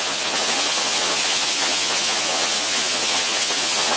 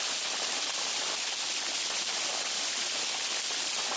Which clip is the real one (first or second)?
second